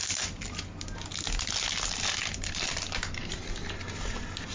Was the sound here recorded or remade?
recorded